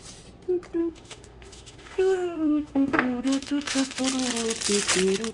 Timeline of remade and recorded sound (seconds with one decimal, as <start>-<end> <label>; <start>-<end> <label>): 0.0-0.8 recorded; 0.8-4.0 remade; 4.0-5.3 recorded